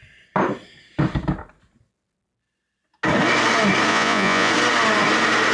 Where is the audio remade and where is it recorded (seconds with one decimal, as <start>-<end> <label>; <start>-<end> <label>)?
0.0-3.9 recorded; 3.9-4.5 remade; 4.5-5.5 recorded